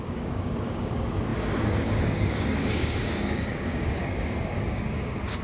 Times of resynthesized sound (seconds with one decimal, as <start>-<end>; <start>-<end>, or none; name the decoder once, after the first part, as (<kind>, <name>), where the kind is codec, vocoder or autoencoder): 0.0-5.4 (codec, DAC)